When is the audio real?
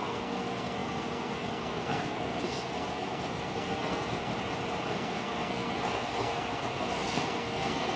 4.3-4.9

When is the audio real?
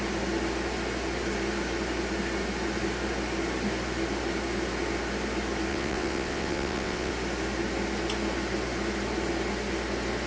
0.0-5.7; 7.1-10.3